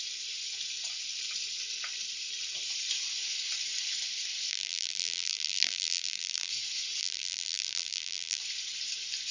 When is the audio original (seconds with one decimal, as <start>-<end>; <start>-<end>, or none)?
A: 0.0-4.5; 6.5-7.0; 8.4-9.3

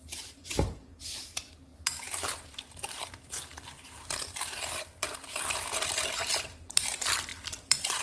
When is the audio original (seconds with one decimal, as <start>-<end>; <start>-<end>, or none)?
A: none

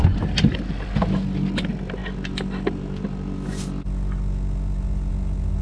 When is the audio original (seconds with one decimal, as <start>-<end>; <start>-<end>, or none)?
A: 0.0-5.6

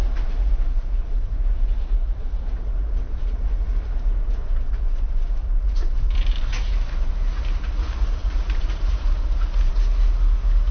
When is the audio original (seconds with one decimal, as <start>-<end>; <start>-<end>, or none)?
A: 2.4-4.4; 7.1-8.2; 9.7-10.7

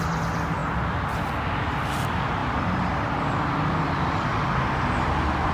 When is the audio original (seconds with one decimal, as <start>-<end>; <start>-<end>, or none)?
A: 0.0-5.5

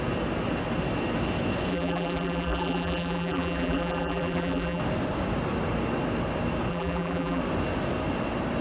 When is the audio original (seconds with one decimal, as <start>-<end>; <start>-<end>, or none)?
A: 0.0-1.7; 4.8-6.7; 7.4-8.6

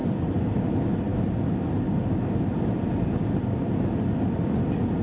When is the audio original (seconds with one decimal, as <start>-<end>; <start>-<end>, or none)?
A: 0.6-5.0